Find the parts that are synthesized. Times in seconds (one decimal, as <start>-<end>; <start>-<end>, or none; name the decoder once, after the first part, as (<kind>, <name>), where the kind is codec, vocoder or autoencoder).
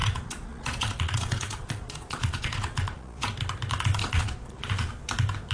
0.0-3.3 (vocoder, Vocos); 4.0-4.9